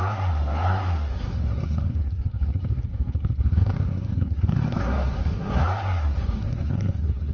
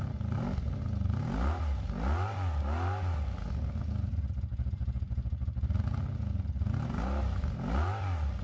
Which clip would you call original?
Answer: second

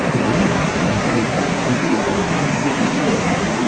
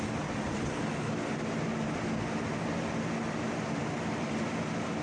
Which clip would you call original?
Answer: second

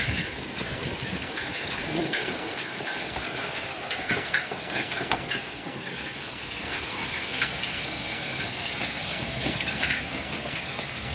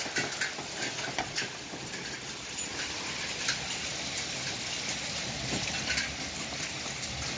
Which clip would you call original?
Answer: second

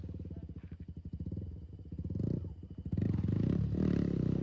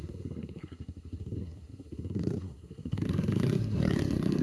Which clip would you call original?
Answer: first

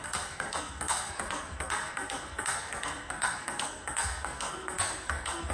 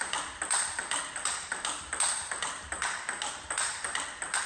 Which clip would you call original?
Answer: second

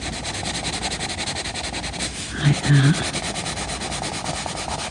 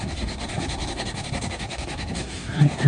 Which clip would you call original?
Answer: first